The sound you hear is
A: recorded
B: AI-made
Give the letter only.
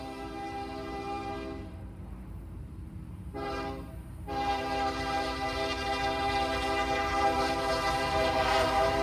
B